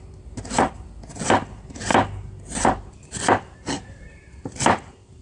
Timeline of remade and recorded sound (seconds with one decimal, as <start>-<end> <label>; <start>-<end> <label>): 0.0-5.2 recorded